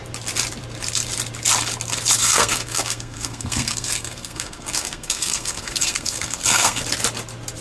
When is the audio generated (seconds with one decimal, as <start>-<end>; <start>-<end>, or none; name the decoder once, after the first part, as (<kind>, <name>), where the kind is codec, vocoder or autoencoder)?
2.2-6.8 (codec, SNAC)